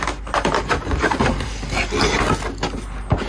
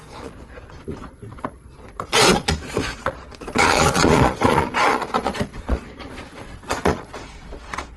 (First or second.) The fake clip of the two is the second